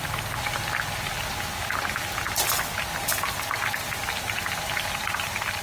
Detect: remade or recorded recorded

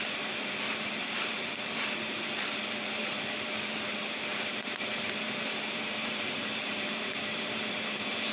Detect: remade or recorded remade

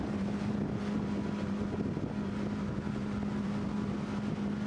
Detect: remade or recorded recorded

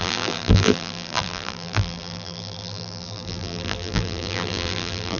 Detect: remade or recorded remade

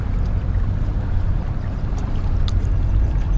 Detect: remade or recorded remade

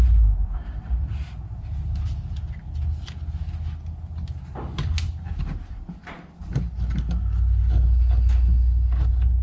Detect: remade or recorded recorded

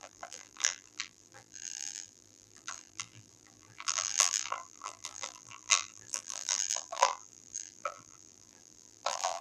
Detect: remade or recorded remade